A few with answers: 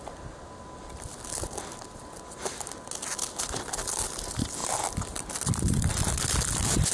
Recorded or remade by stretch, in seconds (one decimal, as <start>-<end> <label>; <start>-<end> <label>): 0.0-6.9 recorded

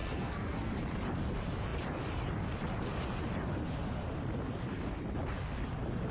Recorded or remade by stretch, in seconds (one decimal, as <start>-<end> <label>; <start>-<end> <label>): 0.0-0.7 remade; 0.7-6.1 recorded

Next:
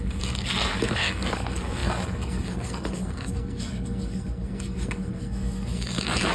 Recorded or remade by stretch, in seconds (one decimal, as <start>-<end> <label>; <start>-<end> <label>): 0.0-6.3 remade